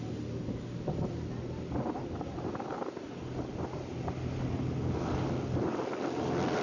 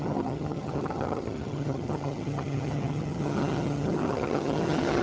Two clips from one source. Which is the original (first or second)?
first